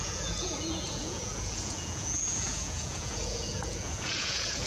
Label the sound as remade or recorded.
remade